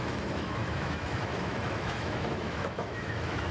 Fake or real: fake